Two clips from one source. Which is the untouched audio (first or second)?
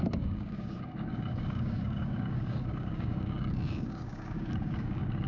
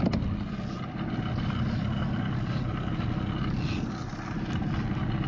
second